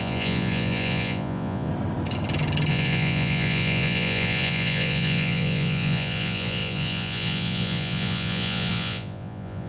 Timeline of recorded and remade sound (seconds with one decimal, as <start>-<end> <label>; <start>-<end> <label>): 0.0-1.7 remade; 1.7-2.7 recorded; 2.7-9.7 remade